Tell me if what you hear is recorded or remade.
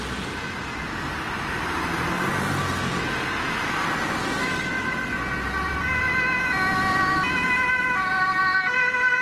recorded